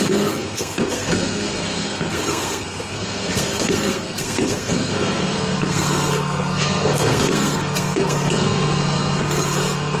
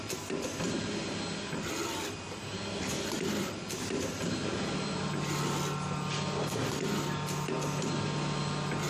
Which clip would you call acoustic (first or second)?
second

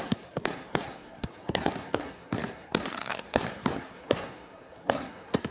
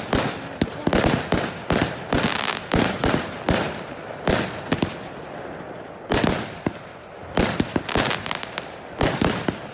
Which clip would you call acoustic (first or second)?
second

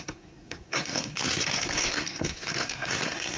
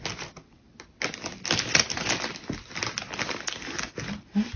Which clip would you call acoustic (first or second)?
second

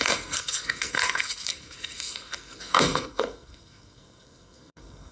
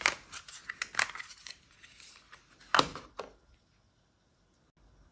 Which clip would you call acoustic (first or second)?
second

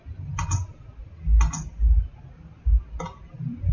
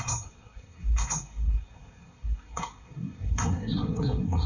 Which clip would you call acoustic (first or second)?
first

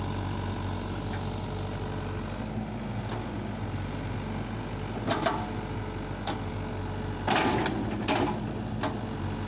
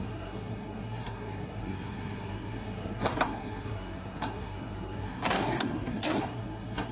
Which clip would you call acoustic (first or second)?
first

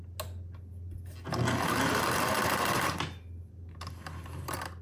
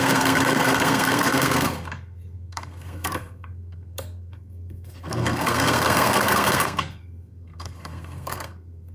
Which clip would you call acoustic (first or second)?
first